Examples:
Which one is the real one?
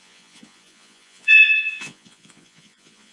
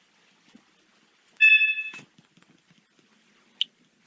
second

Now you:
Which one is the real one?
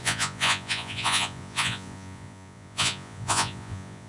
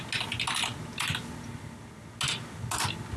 second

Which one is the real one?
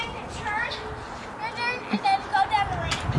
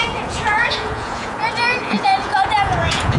first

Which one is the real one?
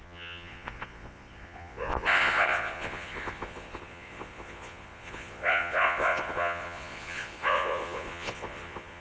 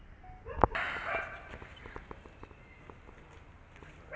second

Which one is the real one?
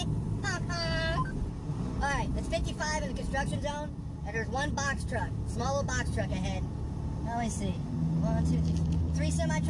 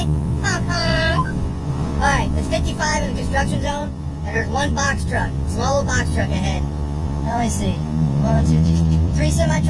first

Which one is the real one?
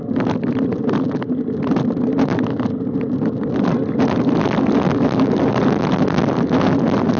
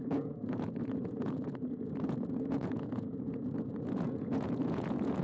first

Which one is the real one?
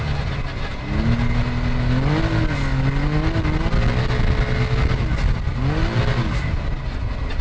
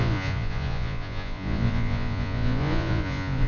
first